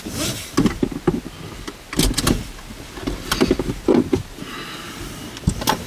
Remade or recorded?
recorded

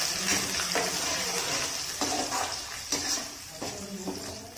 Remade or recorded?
recorded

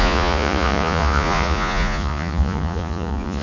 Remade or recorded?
remade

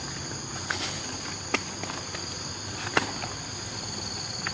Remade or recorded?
recorded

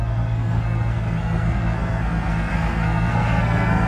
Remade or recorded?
remade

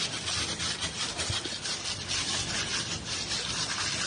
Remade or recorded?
recorded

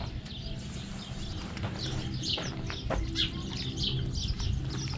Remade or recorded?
recorded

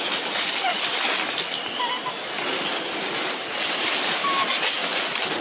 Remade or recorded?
recorded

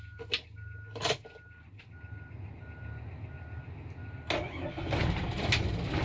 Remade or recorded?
recorded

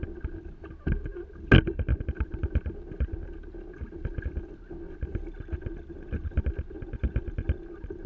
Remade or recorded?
recorded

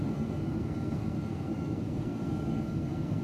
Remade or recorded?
remade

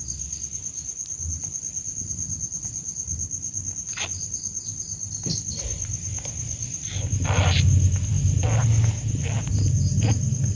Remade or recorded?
recorded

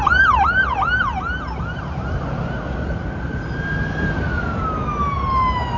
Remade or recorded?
recorded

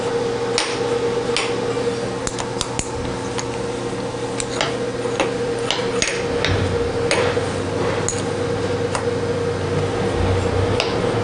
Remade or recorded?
recorded